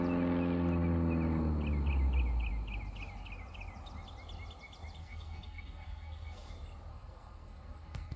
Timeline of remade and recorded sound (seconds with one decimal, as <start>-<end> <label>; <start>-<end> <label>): 0.0-5.0 recorded; 5.0-6.5 remade; 6.5-6.9 recorded; 6.9-8.2 remade